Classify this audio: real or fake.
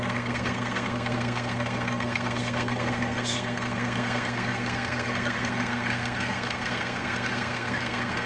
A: fake